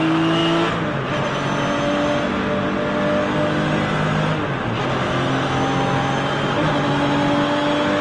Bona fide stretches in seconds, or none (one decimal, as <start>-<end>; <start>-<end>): 0.0-8.0